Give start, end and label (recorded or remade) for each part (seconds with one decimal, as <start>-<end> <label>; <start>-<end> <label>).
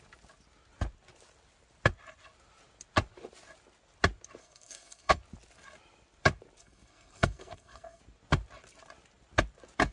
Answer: 0.0-4.4 recorded; 4.4-5.2 remade; 5.2-6.6 recorded; 6.6-8.0 remade; 8.0-9.9 recorded